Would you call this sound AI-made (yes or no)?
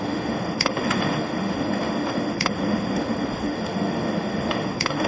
yes